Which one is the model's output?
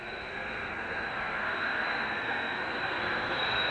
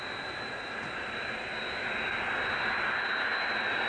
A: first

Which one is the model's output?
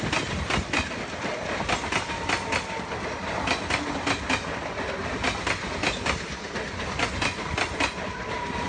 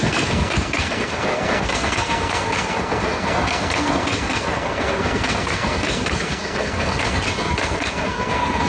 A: second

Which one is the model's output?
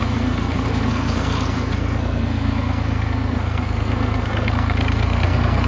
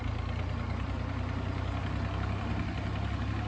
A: first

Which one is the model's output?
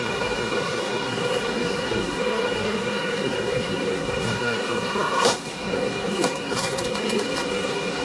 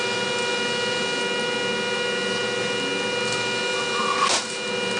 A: first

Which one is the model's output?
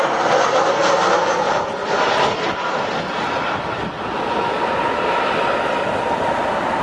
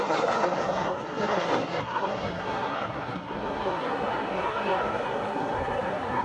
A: second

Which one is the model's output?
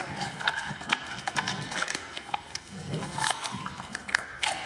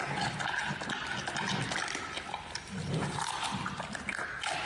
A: first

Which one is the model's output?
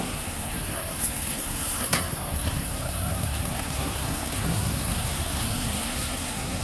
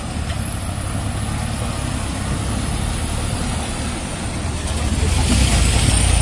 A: first